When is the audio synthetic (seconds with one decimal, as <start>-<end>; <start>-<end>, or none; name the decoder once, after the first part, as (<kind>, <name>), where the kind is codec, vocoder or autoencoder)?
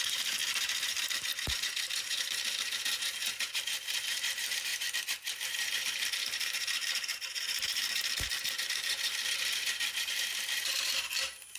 0.0-11.6 (vocoder, BigVGAN v2)